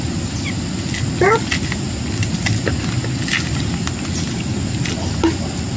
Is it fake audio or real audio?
real